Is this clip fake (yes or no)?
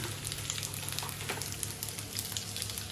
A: no